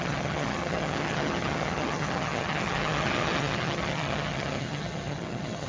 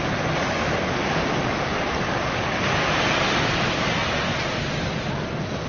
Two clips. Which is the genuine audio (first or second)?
second